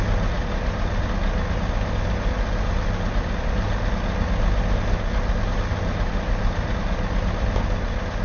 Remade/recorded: recorded